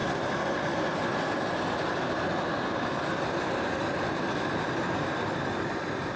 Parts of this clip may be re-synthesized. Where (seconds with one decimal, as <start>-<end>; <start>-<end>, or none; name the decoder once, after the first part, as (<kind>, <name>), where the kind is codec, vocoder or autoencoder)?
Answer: 3.4-6.2 (vocoder, BigVGAN v2)